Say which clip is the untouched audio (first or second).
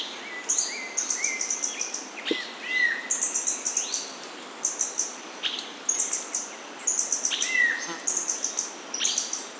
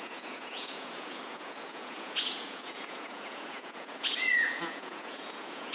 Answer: first